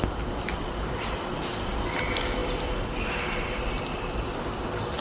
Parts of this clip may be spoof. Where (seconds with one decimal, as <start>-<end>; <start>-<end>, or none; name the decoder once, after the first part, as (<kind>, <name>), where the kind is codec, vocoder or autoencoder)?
none